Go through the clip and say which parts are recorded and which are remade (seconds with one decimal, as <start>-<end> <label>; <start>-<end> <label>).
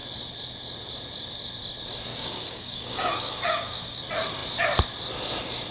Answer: 0.0-2.1 recorded; 2.1-4.0 remade; 4.0-5.7 recorded